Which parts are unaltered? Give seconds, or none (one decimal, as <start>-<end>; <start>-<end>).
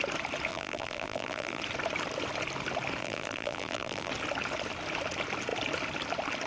0.0-0.5; 1.6-3.0; 4.1-6.5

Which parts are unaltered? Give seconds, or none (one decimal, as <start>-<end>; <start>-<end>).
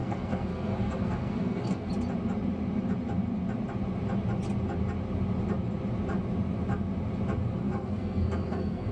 1.9-7.6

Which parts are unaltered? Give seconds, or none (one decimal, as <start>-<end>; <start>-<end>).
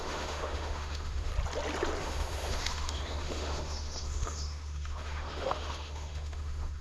1.3-2.0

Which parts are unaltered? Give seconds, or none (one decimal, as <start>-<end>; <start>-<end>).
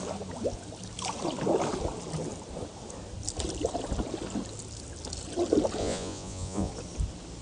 0.0-5.8; 6.7-7.4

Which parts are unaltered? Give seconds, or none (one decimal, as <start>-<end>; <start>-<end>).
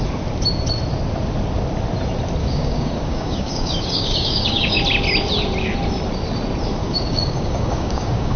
0.0-2.4; 4.8-6.8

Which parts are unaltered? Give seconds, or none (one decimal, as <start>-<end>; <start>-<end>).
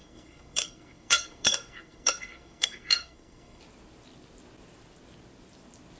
3.6-6.0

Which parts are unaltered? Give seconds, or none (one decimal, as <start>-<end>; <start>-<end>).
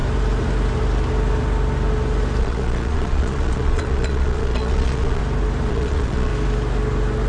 0.0-2.4; 5.2-5.7; 6.3-7.3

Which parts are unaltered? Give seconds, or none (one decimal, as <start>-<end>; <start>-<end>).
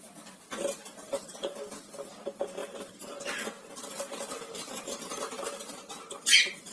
0.0-6.7